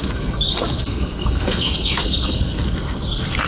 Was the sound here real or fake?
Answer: fake